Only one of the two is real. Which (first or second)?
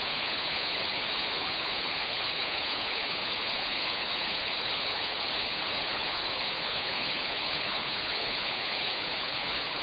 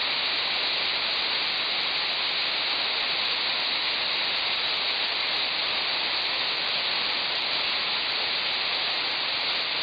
second